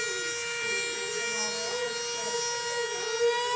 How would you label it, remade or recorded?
recorded